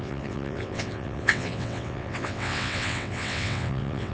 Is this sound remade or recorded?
remade